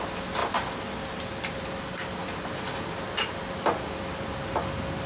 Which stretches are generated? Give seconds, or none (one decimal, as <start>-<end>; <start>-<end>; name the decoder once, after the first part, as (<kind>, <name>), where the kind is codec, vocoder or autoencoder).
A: none